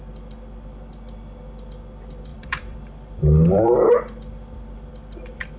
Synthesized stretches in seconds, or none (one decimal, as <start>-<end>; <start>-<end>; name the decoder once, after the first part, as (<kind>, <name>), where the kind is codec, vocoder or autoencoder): 2.3-4.9 (vocoder, BigVGAN v2)